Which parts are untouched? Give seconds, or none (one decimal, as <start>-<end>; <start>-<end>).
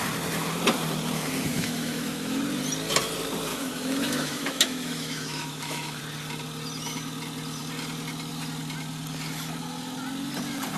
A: 0.0-1.5; 2.4-3.5; 6.0-10.8